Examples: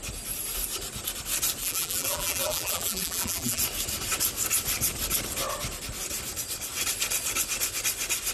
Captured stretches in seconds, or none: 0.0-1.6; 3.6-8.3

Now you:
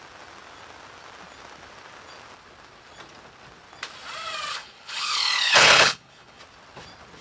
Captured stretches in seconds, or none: 0.0-4.5; 6.4-7.2

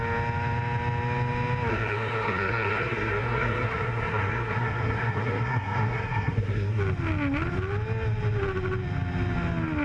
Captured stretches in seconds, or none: 0.0-1.7; 6.8-9.8

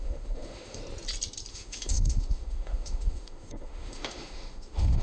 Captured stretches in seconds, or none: 0.8-1.5